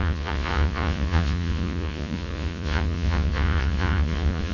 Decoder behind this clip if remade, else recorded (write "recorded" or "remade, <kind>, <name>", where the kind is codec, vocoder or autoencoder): remade, vocoder, Vocos